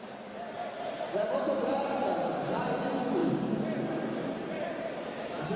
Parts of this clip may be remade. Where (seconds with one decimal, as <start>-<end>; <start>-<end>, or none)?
1.7-2.6; 3.2-5.6